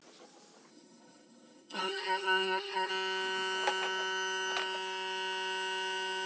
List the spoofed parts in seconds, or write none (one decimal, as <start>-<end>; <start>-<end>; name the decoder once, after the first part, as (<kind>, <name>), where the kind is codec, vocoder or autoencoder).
0.7-2.9 (codec, SNAC)